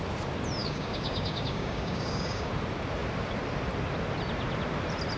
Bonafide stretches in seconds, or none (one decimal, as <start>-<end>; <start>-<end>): 0.0-0.6; 2.5-5.2